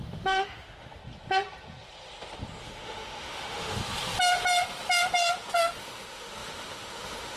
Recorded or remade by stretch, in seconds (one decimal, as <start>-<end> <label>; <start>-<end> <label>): 0.0-1.0 remade; 1.0-2.6 recorded; 2.6-3.8 remade; 3.8-5.6 recorded; 5.6-7.4 remade